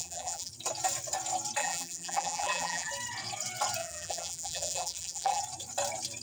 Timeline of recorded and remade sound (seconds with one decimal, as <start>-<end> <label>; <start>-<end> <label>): 0.0-0.5 remade; 0.5-1.6 recorded; 1.6-2.9 remade; 2.9-3.8 recorded; 3.8-5.4 remade; 5.4-6.2 recorded